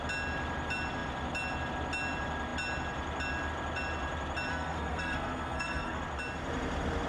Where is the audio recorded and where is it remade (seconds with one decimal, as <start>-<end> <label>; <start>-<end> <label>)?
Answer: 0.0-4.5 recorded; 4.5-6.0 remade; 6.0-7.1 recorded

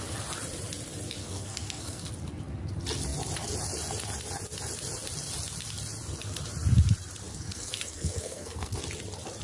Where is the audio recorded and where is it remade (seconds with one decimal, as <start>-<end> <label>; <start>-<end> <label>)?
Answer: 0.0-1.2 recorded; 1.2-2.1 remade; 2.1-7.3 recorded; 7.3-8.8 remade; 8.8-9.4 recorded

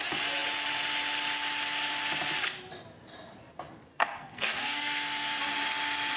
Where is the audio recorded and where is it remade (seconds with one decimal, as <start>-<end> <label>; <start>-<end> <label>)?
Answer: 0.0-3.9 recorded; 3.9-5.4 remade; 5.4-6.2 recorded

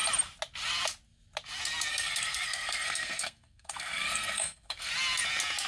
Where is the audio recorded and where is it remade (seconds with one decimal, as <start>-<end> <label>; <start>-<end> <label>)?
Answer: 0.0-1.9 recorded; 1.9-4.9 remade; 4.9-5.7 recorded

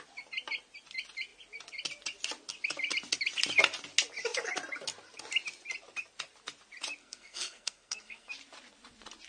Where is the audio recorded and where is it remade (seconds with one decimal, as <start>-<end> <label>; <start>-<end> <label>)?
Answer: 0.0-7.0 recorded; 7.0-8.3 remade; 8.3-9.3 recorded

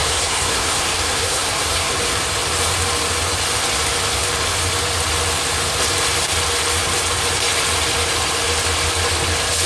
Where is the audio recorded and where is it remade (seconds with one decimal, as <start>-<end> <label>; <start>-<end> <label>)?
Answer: 0.0-1.9 remade; 1.9-9.7 recorded